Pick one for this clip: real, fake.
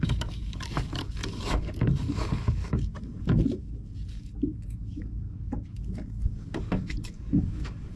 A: fake